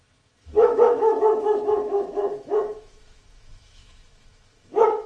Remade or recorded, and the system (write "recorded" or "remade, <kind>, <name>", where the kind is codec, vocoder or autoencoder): remade, autoencoder, DAC-VAE